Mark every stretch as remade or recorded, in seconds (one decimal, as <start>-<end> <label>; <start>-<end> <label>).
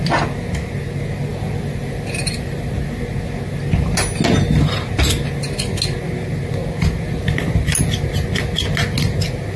0.0-1.3 recorded; 1.3-3.0 remade; 3.0-9.6 recorded